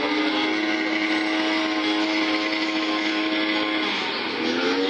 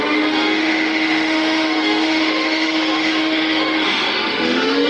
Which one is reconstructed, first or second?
second